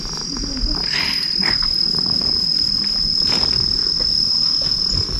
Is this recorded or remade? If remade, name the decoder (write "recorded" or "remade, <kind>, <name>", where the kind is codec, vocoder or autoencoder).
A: recorded